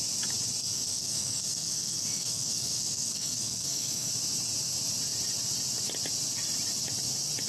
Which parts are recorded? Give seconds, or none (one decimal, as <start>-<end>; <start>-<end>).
0.0-0.6; 4.1-7.5